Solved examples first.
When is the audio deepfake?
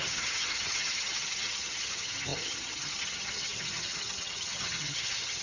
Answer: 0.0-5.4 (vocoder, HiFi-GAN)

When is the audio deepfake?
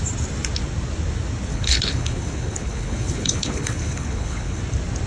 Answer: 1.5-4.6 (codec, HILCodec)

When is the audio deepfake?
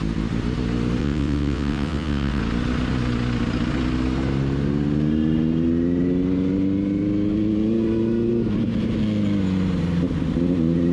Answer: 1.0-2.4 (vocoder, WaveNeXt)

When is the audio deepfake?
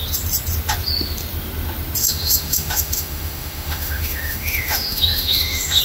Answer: 2.0-5.8 (autoencoder, DAC-VAE)